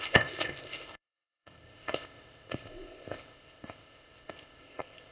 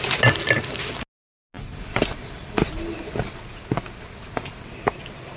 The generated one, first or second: first